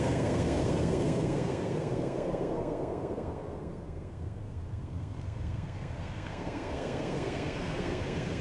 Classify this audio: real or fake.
fake